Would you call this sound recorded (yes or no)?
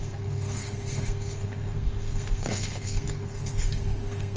no